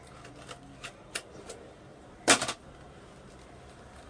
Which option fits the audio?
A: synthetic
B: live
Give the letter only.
B